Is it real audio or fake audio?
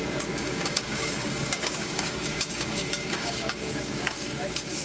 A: fake